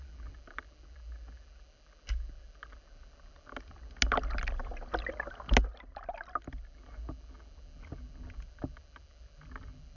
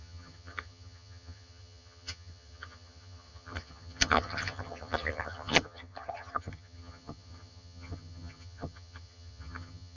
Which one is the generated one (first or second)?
second